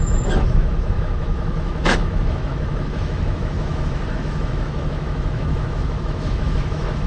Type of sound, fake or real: fake